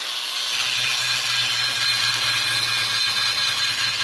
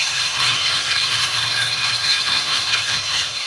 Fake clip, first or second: second